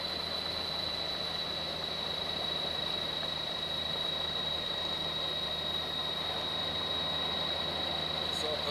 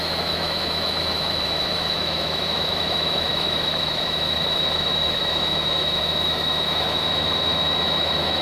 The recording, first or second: first